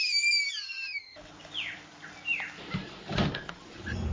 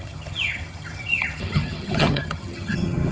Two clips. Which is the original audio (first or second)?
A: first